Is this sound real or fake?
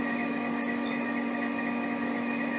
real